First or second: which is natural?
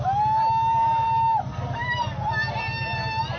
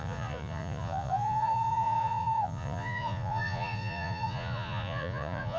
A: first